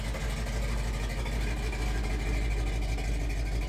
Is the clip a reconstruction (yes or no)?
no